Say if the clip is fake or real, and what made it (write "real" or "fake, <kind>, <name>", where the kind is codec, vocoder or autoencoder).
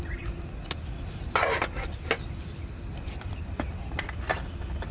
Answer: real